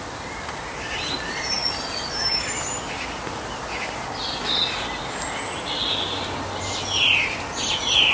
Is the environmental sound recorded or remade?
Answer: recorded